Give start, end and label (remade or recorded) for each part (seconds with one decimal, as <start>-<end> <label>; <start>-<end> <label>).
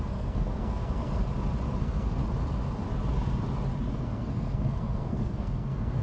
0.0-1.2 remade; 1.2-1.8 recorded; 1.8-2.2 remade; 2.2-3.9 recorded; 3.9-6.0 remade